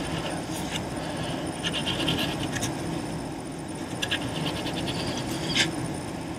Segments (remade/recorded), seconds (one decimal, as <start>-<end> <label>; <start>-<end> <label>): 0.0-6.4 recorded